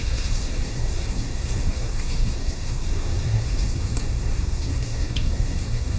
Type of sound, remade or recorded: remade